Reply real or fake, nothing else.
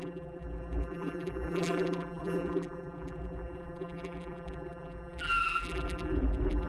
fake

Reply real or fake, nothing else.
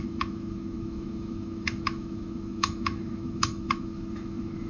fake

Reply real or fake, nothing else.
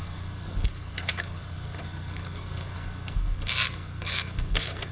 fake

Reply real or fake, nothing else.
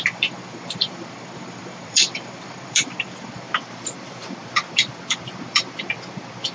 fake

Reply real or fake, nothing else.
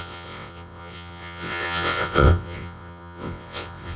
fake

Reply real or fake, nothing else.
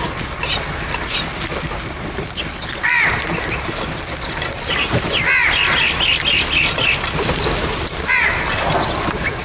real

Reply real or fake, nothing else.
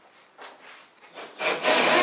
real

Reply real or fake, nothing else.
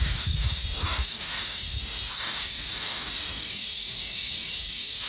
fake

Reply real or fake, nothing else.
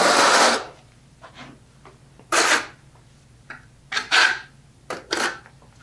real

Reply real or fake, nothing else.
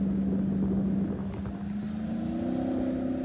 real